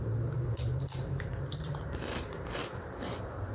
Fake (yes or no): yes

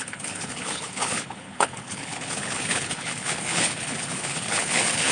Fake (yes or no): yes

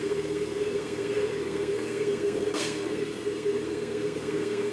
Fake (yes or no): yes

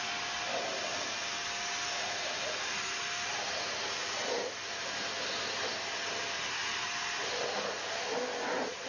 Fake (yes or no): no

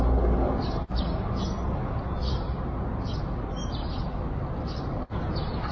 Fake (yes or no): no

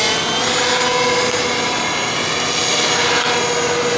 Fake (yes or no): no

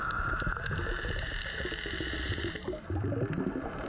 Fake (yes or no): no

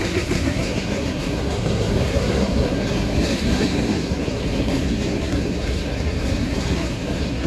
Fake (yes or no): yes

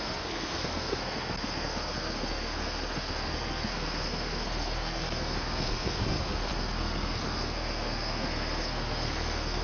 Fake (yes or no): yes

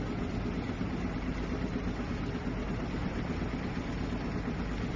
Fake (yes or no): no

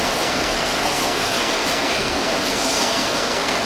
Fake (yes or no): yes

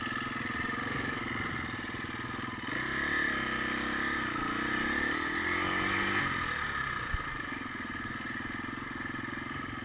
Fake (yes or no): no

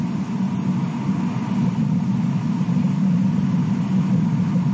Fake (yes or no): no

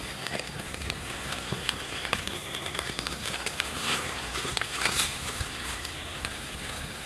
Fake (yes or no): yes